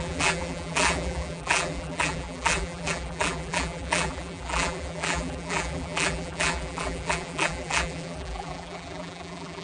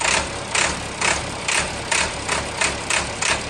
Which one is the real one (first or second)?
second